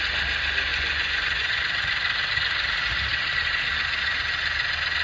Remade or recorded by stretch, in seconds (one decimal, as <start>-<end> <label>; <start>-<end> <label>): 0.0-0.7 recorded; 0.7-1.6 remade; 1.6-5.0 recorded